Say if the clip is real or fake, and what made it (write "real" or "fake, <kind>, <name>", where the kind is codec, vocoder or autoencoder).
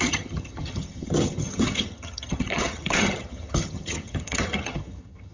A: fake, vocoder, HiFi-GAN